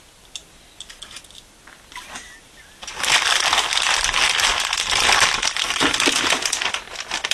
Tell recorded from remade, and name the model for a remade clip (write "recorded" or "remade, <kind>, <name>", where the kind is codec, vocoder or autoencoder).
recorded